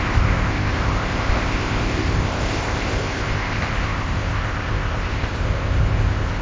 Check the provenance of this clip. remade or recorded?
remade